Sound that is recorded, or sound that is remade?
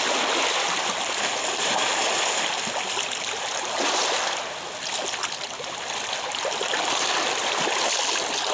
recorded